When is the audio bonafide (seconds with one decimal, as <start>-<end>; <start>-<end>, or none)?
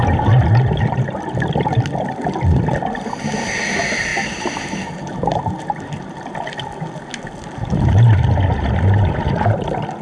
0.0-10.0